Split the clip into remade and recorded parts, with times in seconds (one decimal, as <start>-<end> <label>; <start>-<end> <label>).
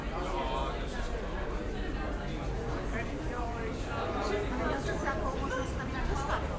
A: 0.0-5.0 recorded; 5.0-5.8 remade; 5.8-6.6 recorded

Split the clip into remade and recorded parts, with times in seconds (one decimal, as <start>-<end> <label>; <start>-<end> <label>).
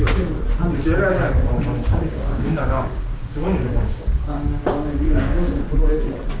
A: 0.0-1.8 recorded; 1.8-5.6 remade; 5.6-6.4 recorded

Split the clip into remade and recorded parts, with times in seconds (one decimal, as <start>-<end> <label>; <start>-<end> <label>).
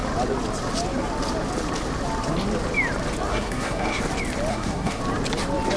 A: 0.0-3.3 recorded; 3.3-4.0 remade; 4.0-4.5 recorded; 4.5-5.0 remade; 5.0-5.8 recorded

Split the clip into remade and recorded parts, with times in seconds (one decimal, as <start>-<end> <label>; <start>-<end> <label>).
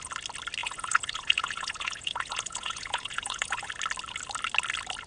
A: 0.0-0.6 recorded; 0.6-3.7 remade; 3.7-5.1 recorded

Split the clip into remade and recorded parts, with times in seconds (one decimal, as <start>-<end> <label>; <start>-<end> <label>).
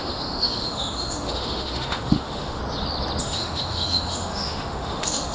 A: 0.0-2.6 remade; 2.6-3.2 recorded; 3.2-5.3 remade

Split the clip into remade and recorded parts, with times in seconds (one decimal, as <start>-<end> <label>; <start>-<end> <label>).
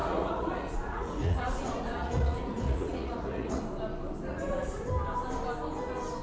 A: 0.0-3.6 remade; 3.6-4.3 recorded; 4.3-4.9 remade; 4.9-6.2 recorded